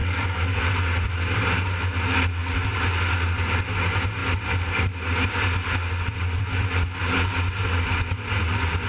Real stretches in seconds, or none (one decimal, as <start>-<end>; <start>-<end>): 0.6-8.9